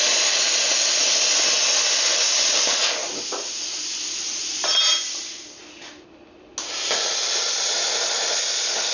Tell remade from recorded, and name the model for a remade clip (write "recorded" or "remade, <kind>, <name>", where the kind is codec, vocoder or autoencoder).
recorded